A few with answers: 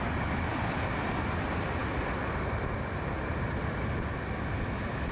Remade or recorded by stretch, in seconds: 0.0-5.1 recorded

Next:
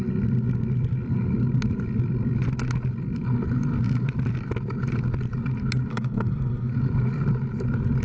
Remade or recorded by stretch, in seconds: 0.0-5.9 recorded; 5.9-6.7 remade; 6.7-8.0 recorded

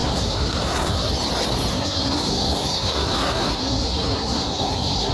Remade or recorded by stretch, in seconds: 0.0-1.1 remade; 1.1-1.7 recorded; 1.7-5.1 remade

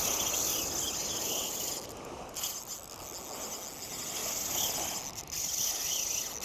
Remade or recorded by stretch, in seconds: 0.0-6.4 recorded

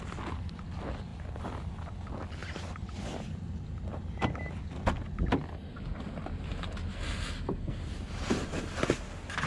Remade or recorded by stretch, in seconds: 0.0-6.9 recorded; 6.9-7.9 remade; 7.9-9.5 recorded

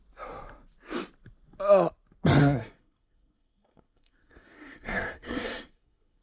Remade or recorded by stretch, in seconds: 0.0-2.4 recorded; 2.4-6.2 remade